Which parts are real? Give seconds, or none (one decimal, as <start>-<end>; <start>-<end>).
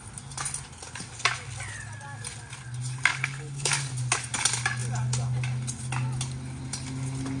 0.0-3.1; 3.7-7.4